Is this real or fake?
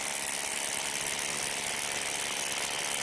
real